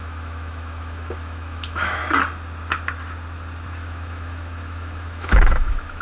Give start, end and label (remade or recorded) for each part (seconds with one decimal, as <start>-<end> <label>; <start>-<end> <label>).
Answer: 0.0-2.0 remade; 2.0-3.7 recorded; 3.7-6.0 remade

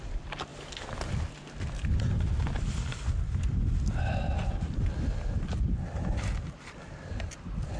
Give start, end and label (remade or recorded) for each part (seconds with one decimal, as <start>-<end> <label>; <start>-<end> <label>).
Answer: 0.0-7.8 recorded

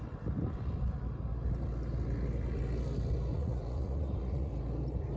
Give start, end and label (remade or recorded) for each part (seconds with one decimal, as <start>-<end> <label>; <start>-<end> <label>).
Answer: 0.0-3.3 recorded; 3.3-4.5 remade; 4.5-5.2 recorded

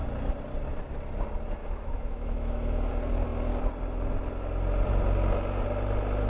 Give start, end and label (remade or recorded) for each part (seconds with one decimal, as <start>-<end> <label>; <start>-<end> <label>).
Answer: 0.0-1.6 recorded; 1.6-2.9 remade; 2.9-6.3 recorded

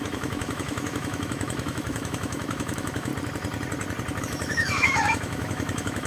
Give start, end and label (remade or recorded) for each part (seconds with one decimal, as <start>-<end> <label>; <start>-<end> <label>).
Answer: 0.0-3.1 remade; 3.1-4.2 recorded; 4.2-6.1 remade

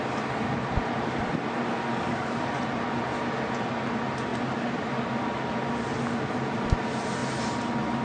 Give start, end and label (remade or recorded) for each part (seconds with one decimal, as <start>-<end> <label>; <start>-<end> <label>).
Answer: 0.0-1.9 recorded; 1.9-2.5 remade; 2.5-8.0 recorded

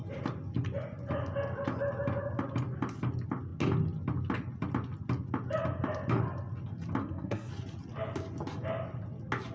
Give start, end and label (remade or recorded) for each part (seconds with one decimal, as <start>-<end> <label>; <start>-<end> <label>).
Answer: 0.0-7.0 recorded; 7.0-7.5 remade; 7.5-9.5 recorded